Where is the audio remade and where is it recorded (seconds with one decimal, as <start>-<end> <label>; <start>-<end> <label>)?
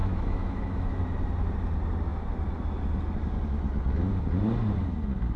0.0-1.0 remade; 1.0-5.4 recorded